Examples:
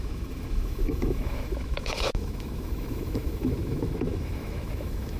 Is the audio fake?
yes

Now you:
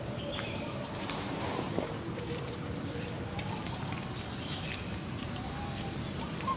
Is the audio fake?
yes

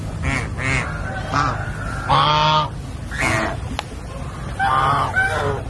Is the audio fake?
no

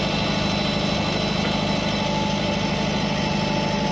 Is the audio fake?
no